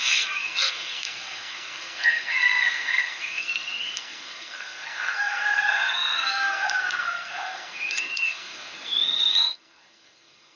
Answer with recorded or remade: remade